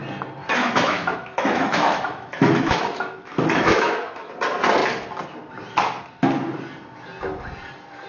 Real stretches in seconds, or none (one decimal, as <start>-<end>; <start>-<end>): 0.0-0.4; 4.3-8.1